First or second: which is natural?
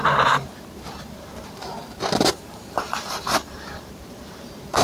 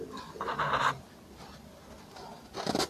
second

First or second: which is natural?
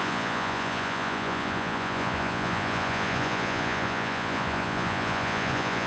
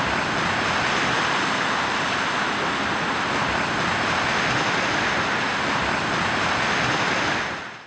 second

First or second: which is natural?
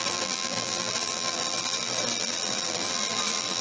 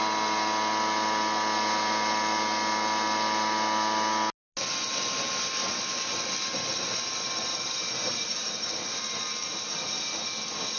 second